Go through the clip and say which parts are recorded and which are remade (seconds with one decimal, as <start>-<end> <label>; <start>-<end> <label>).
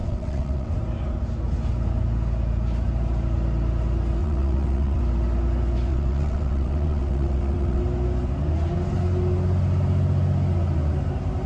0.0-0.7 remade; 0.7-4.2 recorded; 4.2-5.0 remade; 5.0-5.9 recorded; 5.9-7.8 remade; 7.8-11.5 recorded